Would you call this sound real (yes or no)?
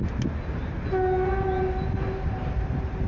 yes